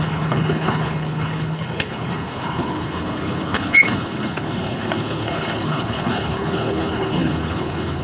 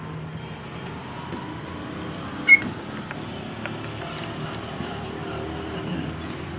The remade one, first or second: first